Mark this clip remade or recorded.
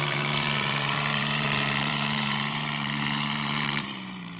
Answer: remade